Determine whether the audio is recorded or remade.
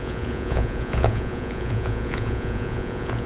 remade